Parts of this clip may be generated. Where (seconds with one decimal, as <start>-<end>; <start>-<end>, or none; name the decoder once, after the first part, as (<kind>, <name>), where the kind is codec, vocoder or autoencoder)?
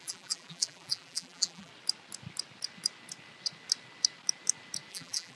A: 0.0-1.7 (vocoder, BigVGAN v2); 4.9-5.4